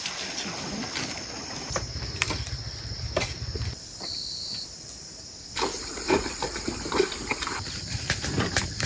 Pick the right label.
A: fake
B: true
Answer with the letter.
A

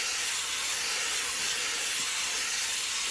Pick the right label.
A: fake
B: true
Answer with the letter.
B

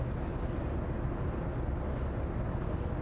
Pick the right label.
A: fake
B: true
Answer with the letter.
B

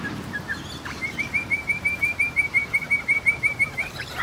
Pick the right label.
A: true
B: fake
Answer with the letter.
B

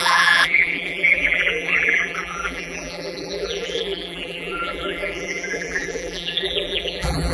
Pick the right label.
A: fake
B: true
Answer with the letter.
A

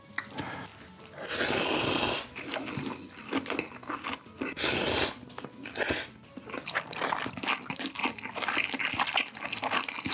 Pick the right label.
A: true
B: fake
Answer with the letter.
A